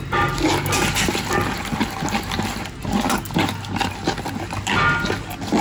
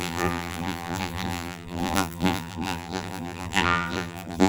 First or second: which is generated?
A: second